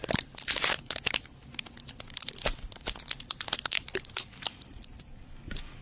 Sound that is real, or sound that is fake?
real